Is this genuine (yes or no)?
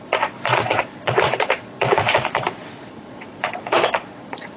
no